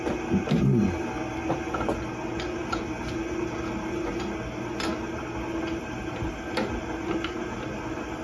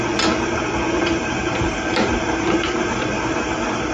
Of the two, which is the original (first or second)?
first